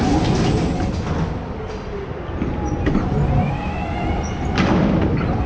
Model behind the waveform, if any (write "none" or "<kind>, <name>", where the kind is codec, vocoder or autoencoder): none